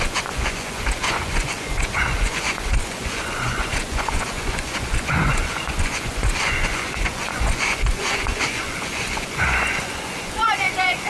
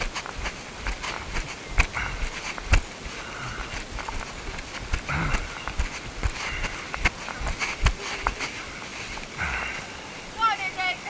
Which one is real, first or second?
second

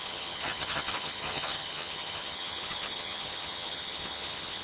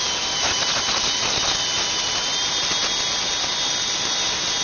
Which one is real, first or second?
second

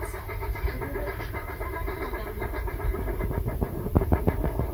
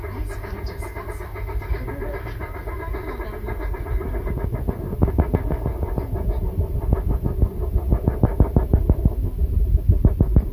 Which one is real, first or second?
second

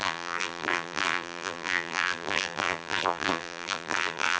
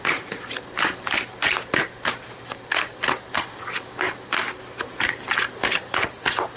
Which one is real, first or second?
second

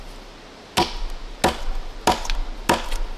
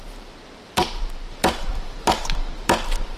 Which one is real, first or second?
first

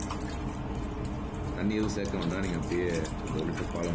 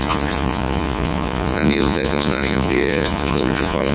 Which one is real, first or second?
first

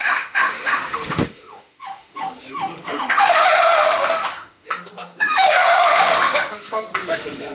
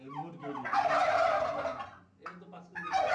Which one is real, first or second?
second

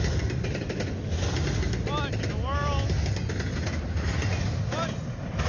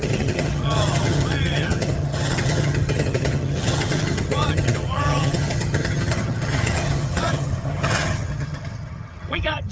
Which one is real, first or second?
first